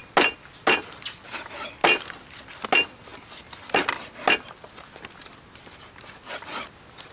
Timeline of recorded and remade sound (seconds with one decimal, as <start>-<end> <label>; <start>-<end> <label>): 0.0-7.1 recorded